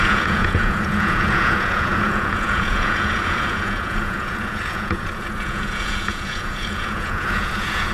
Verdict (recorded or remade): remade